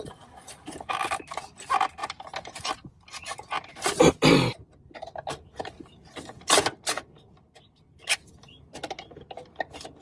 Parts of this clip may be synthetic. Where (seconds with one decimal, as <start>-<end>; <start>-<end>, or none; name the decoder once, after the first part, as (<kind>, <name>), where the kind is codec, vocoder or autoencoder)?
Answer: 2.0-2.9 (vocoder, BigVGAN v2)